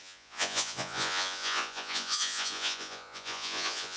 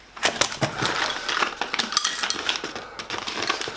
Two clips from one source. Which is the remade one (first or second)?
first